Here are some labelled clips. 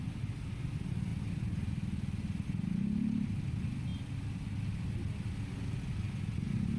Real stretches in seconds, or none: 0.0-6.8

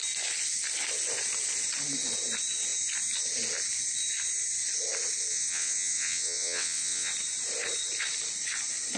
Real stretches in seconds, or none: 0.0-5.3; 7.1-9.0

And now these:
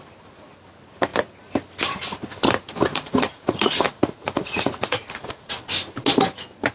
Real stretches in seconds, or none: 0.0-2.9; 5.6-6.7

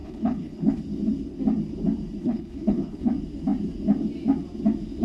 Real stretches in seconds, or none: 0.8-2.2; 3.1-5.0

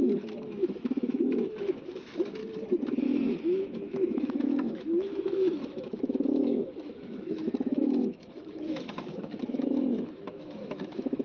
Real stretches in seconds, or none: 2.4-3.0